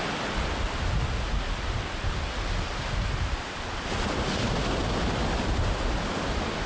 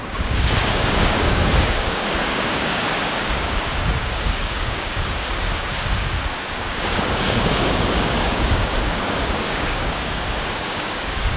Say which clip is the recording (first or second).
first